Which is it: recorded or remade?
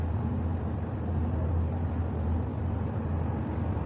recorded